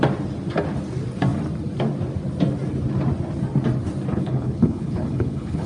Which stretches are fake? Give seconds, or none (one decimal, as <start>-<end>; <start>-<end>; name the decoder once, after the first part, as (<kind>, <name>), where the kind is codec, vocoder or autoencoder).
4.1-5.7 (codec, HILCodec)